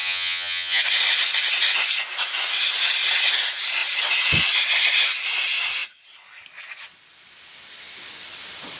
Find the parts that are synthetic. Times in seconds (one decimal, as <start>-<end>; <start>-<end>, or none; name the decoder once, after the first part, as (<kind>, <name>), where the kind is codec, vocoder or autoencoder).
0.0-0.8 (vocoder, HiFi-GAN)